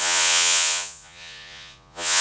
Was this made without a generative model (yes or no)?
no